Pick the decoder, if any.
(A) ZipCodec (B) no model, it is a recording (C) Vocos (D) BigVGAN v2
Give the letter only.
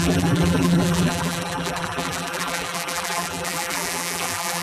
D